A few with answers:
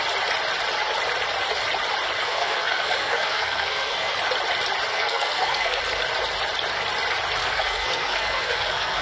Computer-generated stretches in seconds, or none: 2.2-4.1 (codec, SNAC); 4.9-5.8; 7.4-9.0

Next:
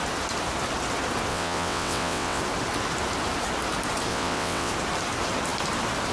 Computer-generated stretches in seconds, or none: 1.3-2.4 (vocoder, WaveNeXt); 4.1-4.7

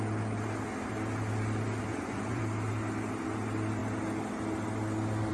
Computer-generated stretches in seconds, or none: 1.9-2.4 (vocoder, Vocos)

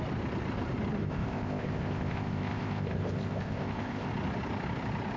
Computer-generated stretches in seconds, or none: 1.0-4.1 (codec, ZipCodec)

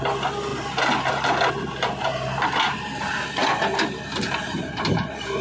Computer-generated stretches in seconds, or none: none